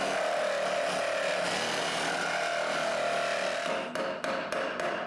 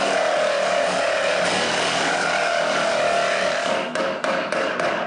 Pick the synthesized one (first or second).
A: second